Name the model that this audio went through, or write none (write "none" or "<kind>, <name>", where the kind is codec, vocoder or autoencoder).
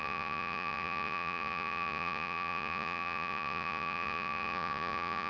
vocoder, Vocos